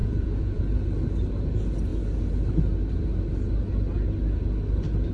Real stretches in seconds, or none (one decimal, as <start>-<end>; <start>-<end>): 0.6-5.1

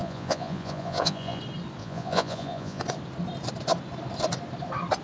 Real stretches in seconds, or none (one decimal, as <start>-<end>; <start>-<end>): 1.4-1.8; 2.8-5.0

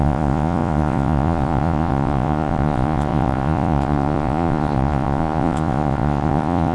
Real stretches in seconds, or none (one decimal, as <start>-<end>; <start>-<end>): none